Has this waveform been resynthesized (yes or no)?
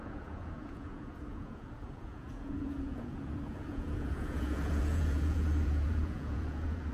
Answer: yes